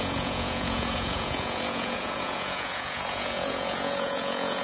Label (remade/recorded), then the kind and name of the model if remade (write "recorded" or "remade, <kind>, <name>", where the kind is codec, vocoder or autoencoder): remade, vocoder, Vocos